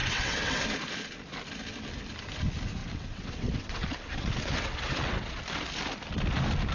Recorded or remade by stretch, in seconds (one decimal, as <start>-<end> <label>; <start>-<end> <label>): 0.0-0.6 remade; 0.6-2.8 recorded; 2.8-5.4 remade; 5.4-6.7 recorded